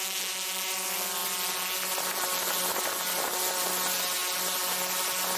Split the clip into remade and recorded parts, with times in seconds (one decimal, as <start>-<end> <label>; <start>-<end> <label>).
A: 0.0-5.4 recorded